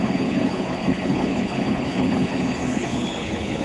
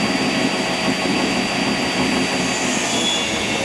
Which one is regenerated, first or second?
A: first